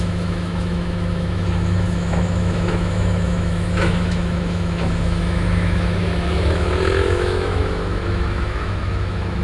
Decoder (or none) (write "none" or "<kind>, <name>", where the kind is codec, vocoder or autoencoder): autoencoder, DAC-VAE